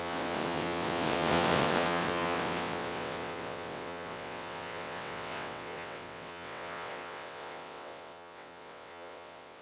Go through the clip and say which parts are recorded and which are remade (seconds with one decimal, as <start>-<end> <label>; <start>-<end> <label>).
0.0-9.6 remade